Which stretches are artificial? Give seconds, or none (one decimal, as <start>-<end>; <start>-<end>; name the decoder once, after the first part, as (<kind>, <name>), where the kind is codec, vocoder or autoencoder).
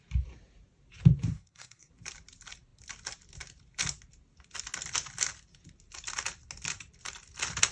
1.3-1.9 (codec, SNAC)